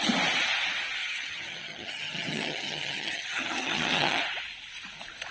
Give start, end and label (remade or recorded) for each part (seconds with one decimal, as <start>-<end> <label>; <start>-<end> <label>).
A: 0.0-1.0 recorded; 1.0-4.2 remade; 4.2-5.3 recorded